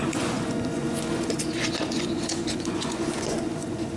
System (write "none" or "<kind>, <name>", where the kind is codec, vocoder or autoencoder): vocoder, Vocos